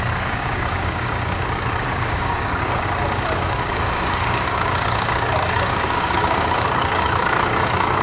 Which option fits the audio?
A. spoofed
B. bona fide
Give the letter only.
A